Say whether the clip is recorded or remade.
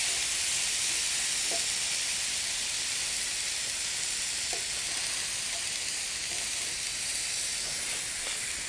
recorded